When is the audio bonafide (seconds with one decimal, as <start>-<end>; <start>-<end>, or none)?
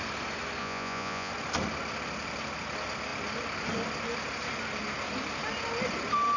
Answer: 0.0-0.6; 1.3-6.4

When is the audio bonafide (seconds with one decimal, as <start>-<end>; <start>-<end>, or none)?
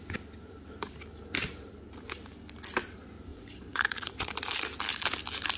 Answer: 0.0-3.3; 4.3-5.6